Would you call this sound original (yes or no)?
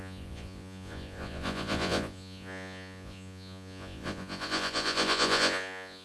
no